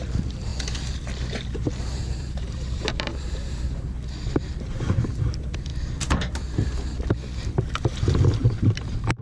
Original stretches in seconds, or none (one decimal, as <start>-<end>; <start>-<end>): 0.5-1.4; 3.9-4.5; 5.7-7.5